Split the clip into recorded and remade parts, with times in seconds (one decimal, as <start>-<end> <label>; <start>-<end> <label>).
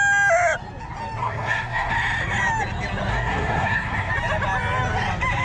0.0-1.2 recorded; 1.2-1.9 remade; 1.9-3.1 recorded; 3.1-4.1 remade; 4.1-5.4 recorded